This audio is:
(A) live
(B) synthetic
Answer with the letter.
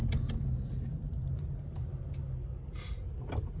A